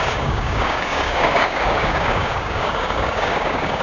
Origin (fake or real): fake